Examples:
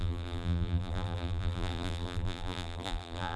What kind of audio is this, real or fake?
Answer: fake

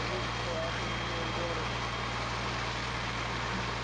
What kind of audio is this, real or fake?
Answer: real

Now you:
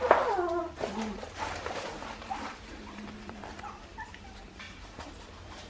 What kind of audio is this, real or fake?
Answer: fake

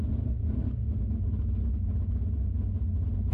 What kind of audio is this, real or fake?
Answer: real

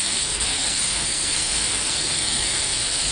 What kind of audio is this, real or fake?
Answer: fake